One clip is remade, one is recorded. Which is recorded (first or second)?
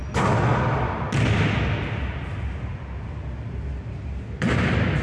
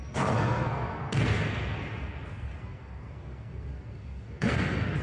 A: first